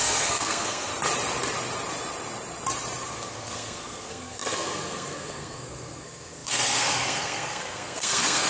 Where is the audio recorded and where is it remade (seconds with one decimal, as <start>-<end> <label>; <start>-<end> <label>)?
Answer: 0.0-0.9 remade; 0.9-3.1 recorded; 3.1-8.5 remade